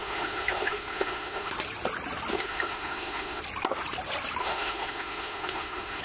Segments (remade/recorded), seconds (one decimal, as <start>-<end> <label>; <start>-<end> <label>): 0.0-1.5 remade; 1.5-2.3 recorded; 2.3-3.4 remade; 3.4-4.4 recorded; 4.4-6.0 remade